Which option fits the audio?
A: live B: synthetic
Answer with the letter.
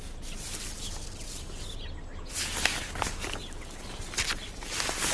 A